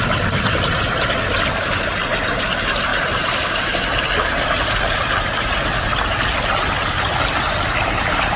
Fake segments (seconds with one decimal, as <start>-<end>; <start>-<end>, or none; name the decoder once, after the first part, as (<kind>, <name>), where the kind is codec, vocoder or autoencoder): 2.9-7.9 (vocoder, BigVGAN v2)